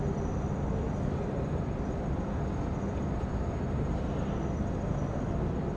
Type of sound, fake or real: real